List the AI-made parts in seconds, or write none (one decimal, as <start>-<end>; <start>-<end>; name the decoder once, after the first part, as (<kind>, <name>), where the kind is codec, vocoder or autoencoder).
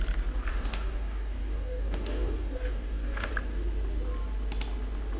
0.5-3.3 (codec, DAC)